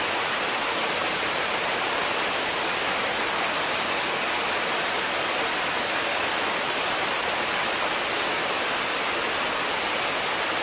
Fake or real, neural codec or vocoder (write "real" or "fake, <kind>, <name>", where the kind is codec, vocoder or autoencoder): real